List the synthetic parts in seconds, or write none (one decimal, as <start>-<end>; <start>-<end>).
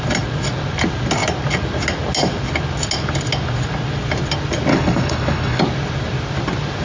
4.7-5.6